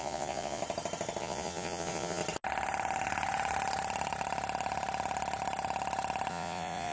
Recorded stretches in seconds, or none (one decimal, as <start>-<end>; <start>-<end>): 0.6-1.2; 2.2-6.3